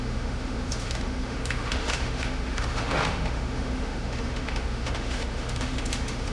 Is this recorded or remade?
remade